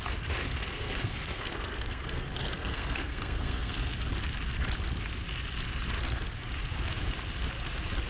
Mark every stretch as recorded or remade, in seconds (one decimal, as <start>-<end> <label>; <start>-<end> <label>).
0.0-0.4 recorded; 0.4-3.9 remade; 3.9-8.1 recorded